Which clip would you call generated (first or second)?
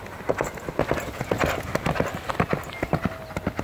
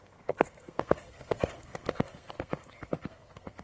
second